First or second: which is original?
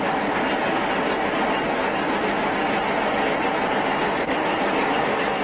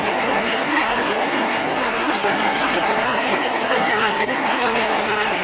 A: first